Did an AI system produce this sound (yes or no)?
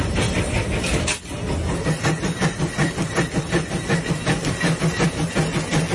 no